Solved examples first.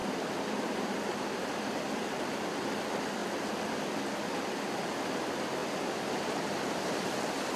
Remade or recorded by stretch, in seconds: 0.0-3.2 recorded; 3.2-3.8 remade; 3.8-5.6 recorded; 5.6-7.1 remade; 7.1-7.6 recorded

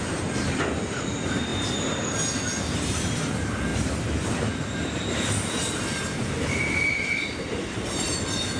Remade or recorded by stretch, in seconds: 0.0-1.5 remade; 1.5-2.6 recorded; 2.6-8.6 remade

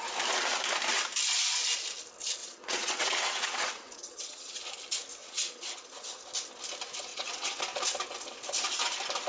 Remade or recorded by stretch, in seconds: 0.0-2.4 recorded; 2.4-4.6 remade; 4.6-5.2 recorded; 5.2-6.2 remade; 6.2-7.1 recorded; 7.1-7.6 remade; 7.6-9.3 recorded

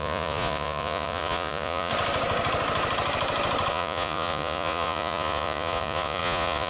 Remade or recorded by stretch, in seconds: 0.0-1.9 remade; 1.9-3.7 recorded; 3.7-6.7 remade

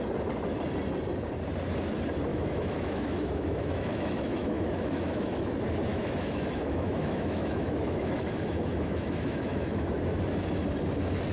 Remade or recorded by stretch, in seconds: 0.0-2.3 recorded; 2.3-5.4 remade; 5.4-5.9 recorded; 5.9-10.0 remade; 10.0-11.3 recorded

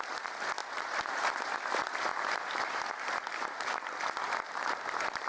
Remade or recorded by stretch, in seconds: 0.0-0.6 recorded; 0.6-1.1 remade; 1.1-2.1 recorded; 2.1-4.1 remade; 4.1-5.3 recorded